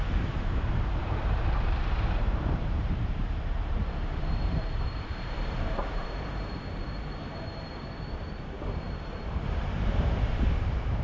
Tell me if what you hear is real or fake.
fake